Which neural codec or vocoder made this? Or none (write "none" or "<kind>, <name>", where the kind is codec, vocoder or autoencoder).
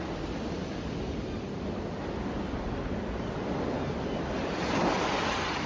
none